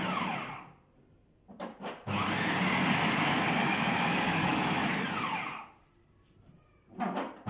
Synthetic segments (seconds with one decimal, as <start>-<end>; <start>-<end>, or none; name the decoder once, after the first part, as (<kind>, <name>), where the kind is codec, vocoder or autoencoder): 3.6-4.8 (autoencoder, DAC-VAE)